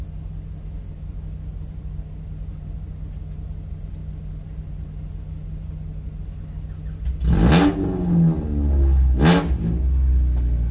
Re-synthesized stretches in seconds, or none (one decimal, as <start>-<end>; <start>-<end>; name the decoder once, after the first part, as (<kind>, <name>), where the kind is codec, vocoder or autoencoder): none